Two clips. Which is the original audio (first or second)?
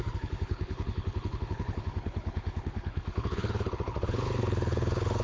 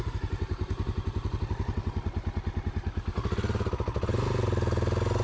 second